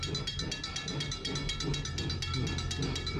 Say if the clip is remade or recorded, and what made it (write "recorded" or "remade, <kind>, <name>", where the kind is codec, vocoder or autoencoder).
recorded